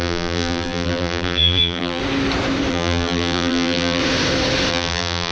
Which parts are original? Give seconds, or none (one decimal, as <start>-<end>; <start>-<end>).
2.0-2.7; 4.0-4.7